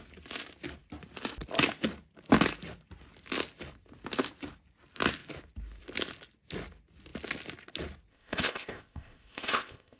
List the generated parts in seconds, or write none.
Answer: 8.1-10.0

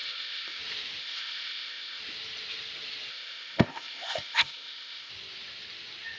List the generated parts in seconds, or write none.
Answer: 0.0-0.6; 1.0-2.0; 3.1-5.1

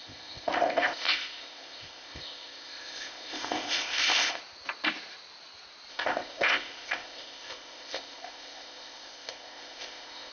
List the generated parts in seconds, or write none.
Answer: 0.0-4.4; 5.9-10.3